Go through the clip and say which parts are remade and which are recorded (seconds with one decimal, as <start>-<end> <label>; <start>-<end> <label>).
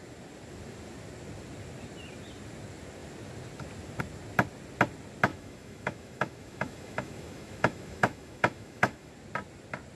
0.0-5.3 recorded; 5.3-9.1 remade; 9.1-10.0 recorded